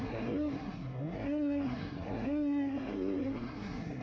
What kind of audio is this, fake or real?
fake